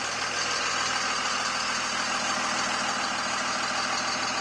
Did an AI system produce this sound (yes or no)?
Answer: no